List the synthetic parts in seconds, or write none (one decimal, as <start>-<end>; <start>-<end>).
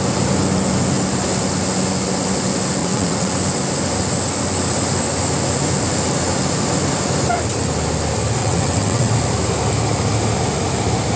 2.8-3.3; 8.4-9.1